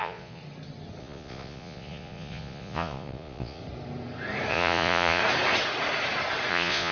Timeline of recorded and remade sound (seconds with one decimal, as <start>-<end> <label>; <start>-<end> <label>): 0.0-0.4 remade; 0.4-1.0 recorded; 1.0-3.6 remade; 3.6-4.5 recorded; 4.5-5.2 remade; 5.2-6.5 recorded; 6.5-6.9 remade